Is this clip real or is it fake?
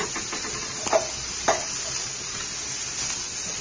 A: real